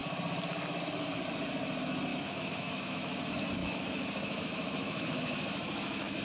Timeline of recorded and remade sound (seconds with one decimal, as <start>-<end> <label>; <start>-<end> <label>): 0.0-2.1 recorded; 2.1-3.2 remade; 3.2-3.6 recorded; 3.6-6.2 remade